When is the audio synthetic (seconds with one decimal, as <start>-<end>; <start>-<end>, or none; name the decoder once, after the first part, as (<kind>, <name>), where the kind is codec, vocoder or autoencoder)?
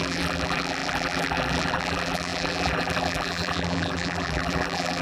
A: 0.0-5.0 (vocoder, BigVGAN v2)